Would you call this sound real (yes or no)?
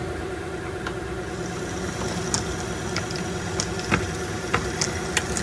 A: yes